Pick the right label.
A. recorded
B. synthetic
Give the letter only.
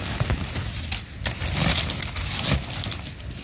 A